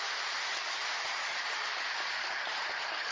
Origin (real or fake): fake